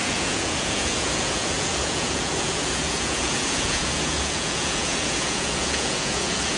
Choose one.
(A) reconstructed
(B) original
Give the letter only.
A